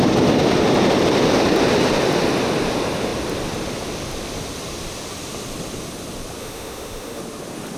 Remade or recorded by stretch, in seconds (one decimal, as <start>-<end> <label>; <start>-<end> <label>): 0.0-6.4 recorded; 6.4-7.2 remade; 7.2-7.8 recorded